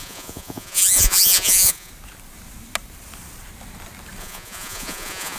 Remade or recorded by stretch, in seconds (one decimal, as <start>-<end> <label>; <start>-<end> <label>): 0.0-1.9 remade; 1.9-4.2 recorded; 4.2-5.4 remade